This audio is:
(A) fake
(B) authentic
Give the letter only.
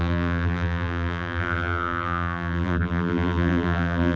A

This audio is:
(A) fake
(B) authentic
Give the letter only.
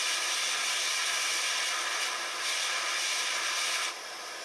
B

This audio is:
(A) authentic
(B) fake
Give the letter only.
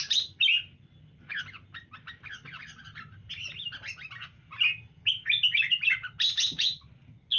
A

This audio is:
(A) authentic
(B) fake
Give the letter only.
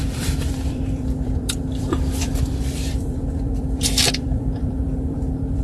B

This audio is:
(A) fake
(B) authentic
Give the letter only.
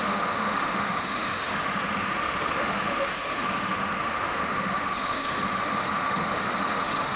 A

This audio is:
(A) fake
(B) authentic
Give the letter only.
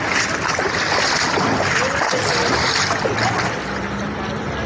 B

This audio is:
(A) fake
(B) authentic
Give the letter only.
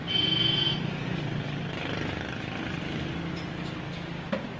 B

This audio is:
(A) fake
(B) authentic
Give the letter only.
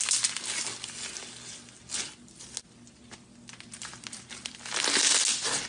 B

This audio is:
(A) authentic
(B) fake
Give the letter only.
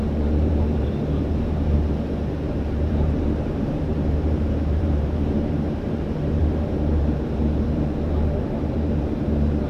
B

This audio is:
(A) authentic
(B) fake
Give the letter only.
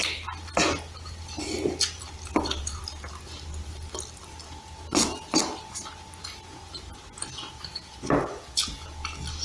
A